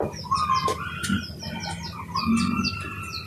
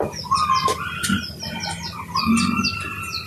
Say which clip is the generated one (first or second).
second